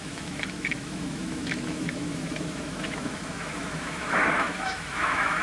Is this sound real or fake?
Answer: fake